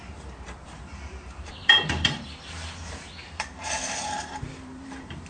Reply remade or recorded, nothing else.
remade